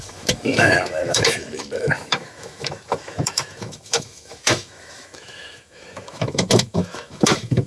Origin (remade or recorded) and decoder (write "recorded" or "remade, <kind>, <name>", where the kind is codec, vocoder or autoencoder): remade, autoencoder, DAC-VAE